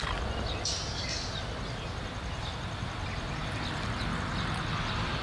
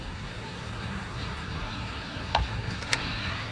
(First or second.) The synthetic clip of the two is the second